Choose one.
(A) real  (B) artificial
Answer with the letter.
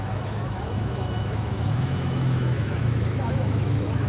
B